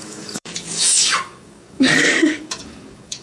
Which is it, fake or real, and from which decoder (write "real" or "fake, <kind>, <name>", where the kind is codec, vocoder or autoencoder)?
fake, codec, DAC